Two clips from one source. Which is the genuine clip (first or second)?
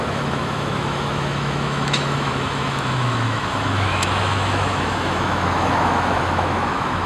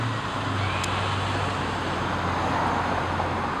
second